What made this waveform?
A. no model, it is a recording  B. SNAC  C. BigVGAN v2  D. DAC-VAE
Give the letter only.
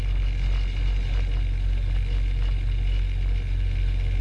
A